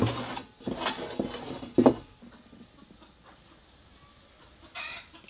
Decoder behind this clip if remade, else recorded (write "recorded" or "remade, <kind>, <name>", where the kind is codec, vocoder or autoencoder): recorded